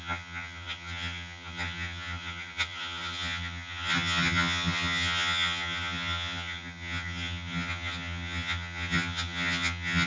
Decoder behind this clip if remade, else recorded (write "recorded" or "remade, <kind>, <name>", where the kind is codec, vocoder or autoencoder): remade, vocoder, HiFi-GAN